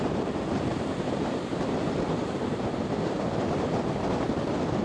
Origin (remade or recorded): recorded